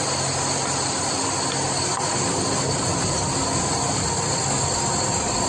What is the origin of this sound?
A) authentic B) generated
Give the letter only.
A